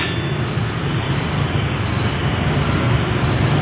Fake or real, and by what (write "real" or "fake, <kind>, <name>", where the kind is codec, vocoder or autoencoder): real